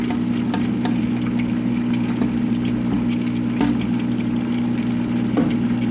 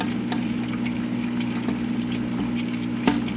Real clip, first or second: second